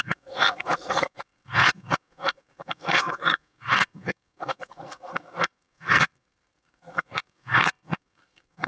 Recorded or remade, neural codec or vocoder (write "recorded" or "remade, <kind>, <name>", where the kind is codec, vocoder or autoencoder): remade, codec, SNAC